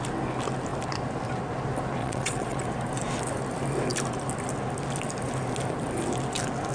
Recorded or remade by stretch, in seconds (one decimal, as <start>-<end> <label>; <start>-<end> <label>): 0.0-2.0 recorded; 2.0-2.6 remade; 2.6-6.7 recorded